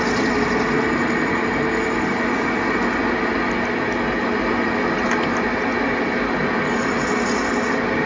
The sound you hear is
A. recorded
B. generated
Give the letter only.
A